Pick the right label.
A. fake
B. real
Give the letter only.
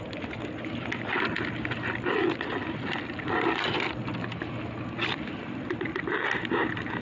B